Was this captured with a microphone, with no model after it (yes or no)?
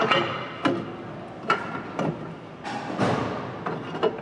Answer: yes